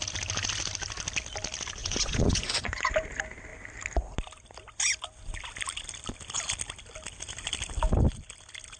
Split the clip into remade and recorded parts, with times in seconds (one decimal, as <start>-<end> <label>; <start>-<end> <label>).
0.0-1.8 recorded; 1.8-2.9 remade; 2.9-8.8 recorded